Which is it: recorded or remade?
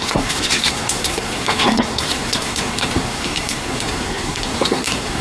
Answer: remade